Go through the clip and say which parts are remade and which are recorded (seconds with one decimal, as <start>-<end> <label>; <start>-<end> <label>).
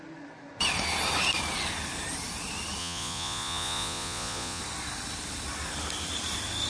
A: 0.0-2.8 recorded; 2.8-4.6 remade; 4.6-6.7 recorded